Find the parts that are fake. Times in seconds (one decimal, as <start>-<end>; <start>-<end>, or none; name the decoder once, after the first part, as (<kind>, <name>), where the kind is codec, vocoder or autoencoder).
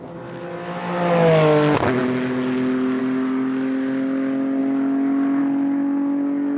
none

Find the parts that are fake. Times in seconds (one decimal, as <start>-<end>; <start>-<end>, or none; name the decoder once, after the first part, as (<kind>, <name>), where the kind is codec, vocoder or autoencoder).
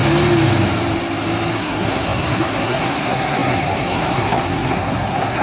1.5-5.4 (codec, SNAC)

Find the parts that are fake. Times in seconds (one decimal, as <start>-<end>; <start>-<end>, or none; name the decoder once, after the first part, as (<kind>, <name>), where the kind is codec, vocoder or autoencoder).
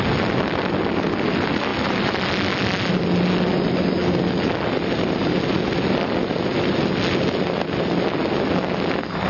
none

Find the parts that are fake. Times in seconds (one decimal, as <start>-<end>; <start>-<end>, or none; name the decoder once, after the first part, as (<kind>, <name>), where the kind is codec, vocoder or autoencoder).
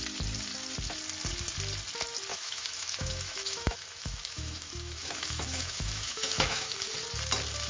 2.3-6.9 (autoencoder, DAC-VAE)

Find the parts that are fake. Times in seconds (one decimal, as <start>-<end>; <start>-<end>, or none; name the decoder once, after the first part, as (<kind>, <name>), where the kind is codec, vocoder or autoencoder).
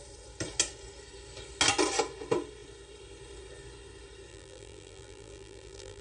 4.3-6.0 (vocoder, BigVGAN v2)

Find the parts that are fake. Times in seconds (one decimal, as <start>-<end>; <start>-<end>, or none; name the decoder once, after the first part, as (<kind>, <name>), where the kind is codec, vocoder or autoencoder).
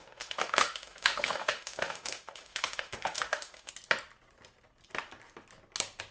0.0-3.7 (autoencoder, DAC-VAE)